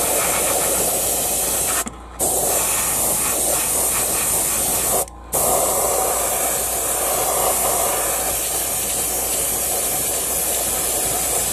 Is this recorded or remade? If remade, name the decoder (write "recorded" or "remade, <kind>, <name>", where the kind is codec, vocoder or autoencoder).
recorded